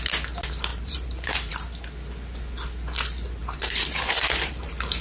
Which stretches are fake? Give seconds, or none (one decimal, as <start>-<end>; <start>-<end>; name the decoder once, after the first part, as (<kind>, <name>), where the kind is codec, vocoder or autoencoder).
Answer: 0.7-1.5 (vocoder, BigVGAN v2); 3.4-5.0